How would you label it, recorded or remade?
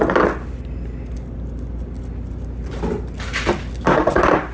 recorded